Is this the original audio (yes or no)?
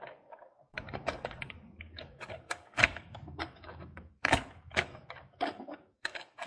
no